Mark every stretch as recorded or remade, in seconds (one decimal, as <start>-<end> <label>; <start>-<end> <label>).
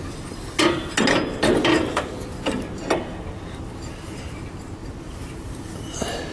0.0-4.8 recorded; 4.8-5.3 remade; 5.3-6.3 recorded